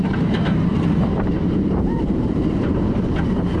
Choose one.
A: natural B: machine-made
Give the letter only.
B